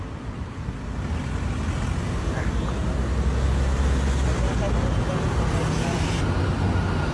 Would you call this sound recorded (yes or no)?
yes